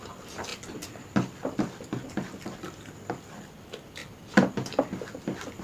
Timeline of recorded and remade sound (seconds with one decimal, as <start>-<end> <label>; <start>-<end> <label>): 0.0-0.5 recorded; 0.5-3.4 remade; 3.4-4.0 recorded; 4.0-5.6 remade